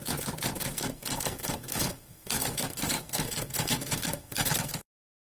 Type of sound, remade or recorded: remade